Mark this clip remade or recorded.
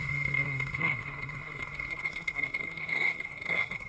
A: remade